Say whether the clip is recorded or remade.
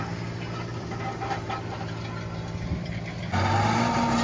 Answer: recorded